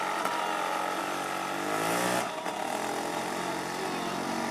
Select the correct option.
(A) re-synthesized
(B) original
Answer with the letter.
B